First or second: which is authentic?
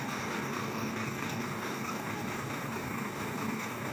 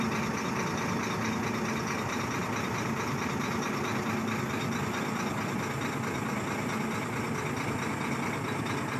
second